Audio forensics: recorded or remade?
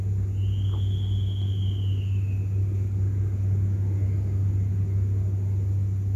recorded